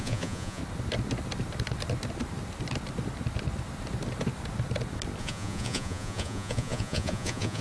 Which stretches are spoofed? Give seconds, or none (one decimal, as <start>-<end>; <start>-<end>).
0.0-0.6; 5.2-7.6